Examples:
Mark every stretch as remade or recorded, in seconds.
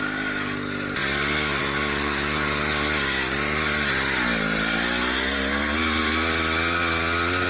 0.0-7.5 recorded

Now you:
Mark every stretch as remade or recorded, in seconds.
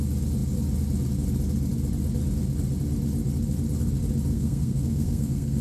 0.0-4.3 recorded; 4.3-5.6 remade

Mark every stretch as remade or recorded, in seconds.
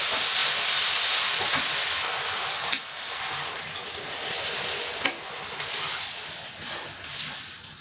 0.0-2.5 recorded; 2.5-3.2 remade; 3.2-7.8 recorded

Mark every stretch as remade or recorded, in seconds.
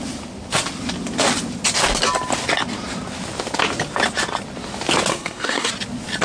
0.0-5.1 recorded; 5.1-5.7 remade; 5.7-6.2 recorded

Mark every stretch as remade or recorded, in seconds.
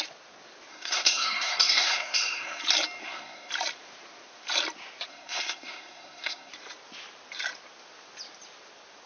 0.0-0.7 recorded; 0.7-2.6 remade; 2.6-3.0 recorded; 3.0-3.5 remade; 3.5-5.1 recorded; 5.1-6.5 remade; 6.5-9.1 recorded